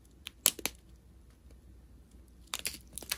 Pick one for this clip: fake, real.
real